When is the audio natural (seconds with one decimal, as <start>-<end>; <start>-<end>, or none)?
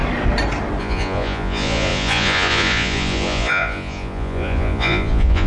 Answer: 0.0-0.8